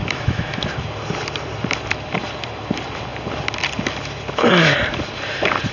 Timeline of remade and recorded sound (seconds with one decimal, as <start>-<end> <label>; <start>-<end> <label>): 0.0-0.7 remade; 0.7-5.7 recorded